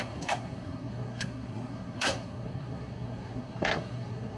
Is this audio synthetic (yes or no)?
yes